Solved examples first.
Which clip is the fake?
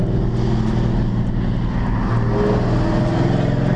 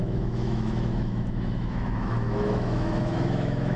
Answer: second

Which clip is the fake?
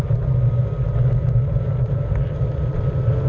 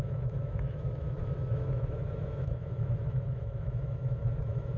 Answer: second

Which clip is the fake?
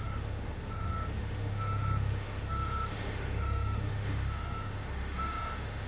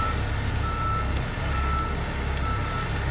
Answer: first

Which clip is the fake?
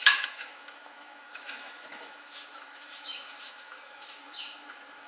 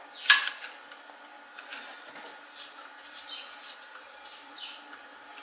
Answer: first